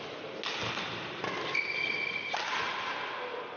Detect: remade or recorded recorded